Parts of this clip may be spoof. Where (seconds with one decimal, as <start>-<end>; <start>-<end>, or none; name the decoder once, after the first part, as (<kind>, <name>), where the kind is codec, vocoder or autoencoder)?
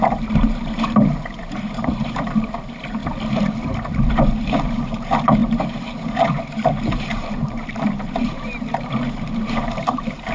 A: 0.0-3.0 (vocoder, BigVGAN v2); 4.4-10.3